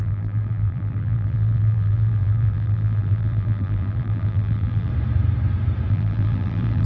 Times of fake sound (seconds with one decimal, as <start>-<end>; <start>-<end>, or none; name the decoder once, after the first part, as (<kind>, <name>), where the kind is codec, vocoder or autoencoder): 0.0-4.9 (vocoder, BigVGAN v2); 5.9-6.9